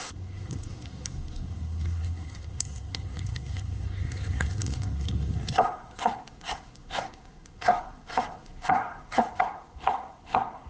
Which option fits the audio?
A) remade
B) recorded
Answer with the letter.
A